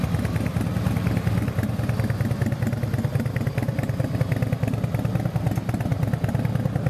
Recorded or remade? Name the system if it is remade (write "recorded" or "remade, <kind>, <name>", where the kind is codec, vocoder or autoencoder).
recorded